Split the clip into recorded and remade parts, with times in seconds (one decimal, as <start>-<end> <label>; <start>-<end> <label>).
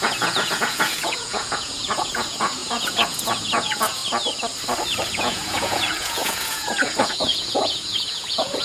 0.0-4.0 remade; 4.0-5.1 recorded; 5.1-8.6 remade